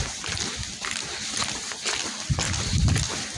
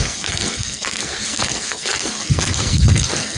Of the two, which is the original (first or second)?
first